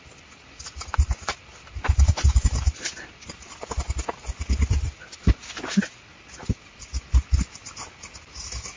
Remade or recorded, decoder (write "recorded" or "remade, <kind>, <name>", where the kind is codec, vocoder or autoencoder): recorded